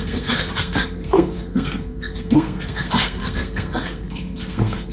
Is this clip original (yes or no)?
no